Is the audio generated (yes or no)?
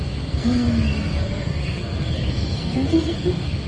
yes